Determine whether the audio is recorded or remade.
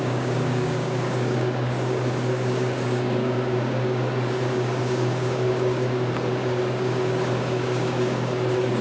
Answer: remade